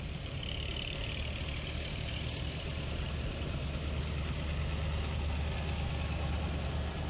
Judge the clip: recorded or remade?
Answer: recorded